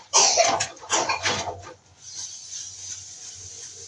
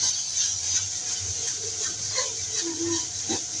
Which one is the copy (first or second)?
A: first